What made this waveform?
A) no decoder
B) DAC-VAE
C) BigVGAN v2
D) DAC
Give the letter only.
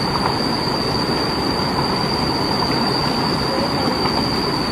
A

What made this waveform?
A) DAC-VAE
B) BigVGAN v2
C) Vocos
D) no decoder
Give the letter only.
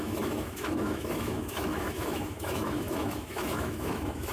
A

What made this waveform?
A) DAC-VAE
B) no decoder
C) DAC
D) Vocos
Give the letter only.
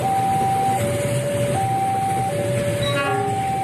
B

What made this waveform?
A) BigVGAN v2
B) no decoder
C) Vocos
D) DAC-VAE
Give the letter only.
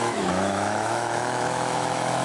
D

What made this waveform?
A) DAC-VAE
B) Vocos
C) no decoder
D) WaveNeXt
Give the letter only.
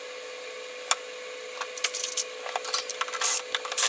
C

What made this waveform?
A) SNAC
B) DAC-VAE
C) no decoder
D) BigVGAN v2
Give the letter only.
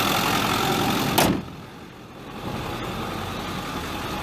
C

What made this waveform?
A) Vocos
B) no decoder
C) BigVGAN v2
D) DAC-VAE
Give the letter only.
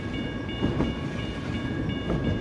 B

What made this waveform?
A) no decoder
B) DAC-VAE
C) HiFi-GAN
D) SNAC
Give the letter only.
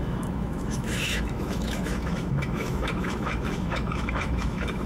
B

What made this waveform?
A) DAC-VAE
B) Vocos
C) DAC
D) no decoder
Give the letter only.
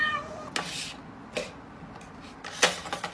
D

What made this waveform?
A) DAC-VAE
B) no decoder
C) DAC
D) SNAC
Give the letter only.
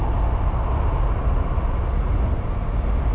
B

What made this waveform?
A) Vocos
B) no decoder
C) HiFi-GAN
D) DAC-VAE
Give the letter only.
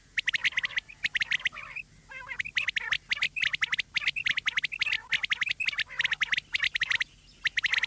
B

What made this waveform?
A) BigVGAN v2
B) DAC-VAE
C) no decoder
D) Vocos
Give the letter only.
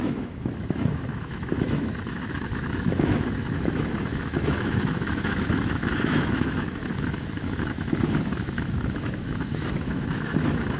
B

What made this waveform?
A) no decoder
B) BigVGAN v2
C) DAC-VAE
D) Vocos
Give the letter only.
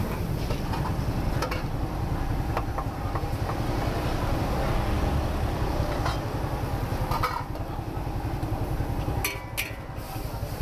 A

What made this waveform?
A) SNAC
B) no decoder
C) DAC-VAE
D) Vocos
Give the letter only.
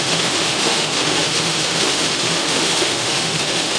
C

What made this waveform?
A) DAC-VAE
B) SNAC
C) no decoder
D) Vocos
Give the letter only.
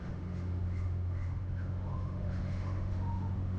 A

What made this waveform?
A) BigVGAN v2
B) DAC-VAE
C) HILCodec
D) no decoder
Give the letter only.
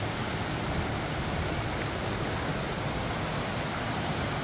D